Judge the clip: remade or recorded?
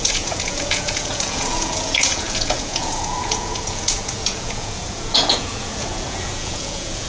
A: remade